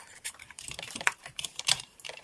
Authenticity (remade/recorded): remade